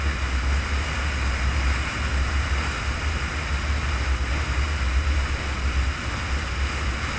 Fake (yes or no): no